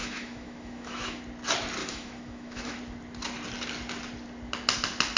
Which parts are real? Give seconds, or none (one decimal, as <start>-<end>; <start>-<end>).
1.2-1.8; 2.8-5.2